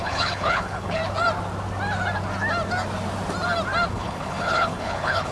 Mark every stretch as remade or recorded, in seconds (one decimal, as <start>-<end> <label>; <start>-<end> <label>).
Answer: 0.0-1.0 remade; 1.0-3.9 recorded; 3.9-5.3 remade